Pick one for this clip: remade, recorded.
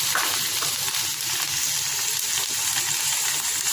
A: recorded